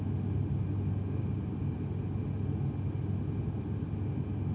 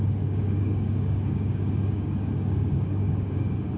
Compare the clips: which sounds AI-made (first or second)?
second